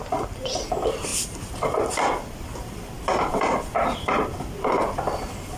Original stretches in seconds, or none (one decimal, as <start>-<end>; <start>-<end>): 0.0-5.6